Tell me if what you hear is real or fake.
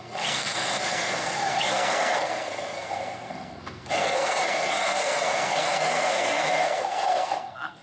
fake